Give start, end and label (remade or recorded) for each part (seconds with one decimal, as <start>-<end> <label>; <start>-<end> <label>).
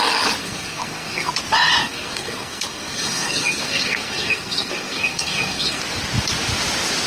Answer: 0.0-0.4 recorded; 0.4-1.3 remade; 1.3-1.8 recorded; 1.8-5.8 remade; 5.8-7.1 recorded